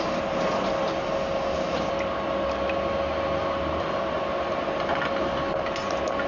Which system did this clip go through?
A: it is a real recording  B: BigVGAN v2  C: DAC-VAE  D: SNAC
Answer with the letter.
A